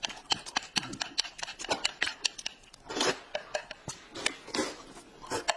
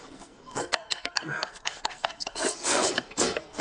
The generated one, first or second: second